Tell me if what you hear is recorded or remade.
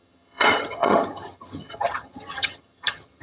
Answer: remade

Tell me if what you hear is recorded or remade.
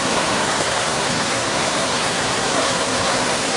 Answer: remade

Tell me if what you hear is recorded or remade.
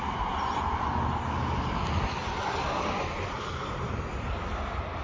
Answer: recorded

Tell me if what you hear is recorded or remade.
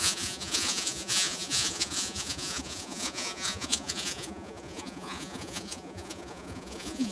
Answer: remade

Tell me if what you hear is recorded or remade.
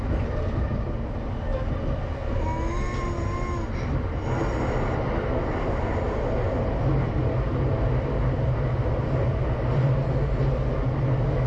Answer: recorded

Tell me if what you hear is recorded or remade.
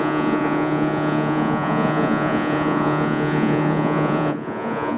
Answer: remade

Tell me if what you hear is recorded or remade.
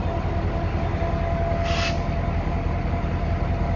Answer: recorded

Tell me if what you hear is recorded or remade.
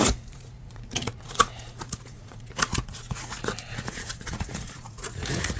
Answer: remade